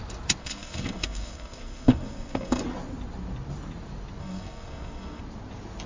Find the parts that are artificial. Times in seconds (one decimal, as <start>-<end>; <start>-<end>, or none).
0.4-2.6; 4.2-5.2